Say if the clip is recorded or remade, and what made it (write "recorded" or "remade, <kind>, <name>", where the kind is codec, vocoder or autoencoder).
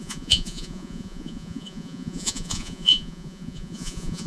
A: remade, vocoder, Vocos